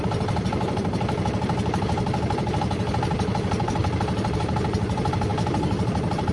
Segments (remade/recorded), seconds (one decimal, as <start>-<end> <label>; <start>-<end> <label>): 0.0-3.8 recorded; 3.8-4.4 remade; 4.4-5.3 recorded; 5.3-6.3 remade